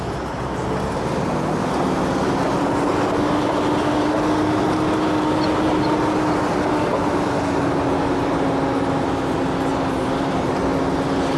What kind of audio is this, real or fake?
real